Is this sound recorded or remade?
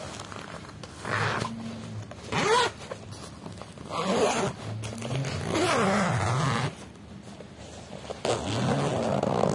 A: recorded